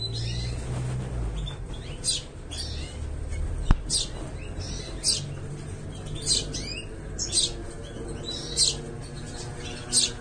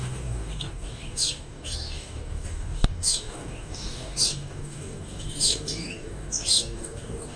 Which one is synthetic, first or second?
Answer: second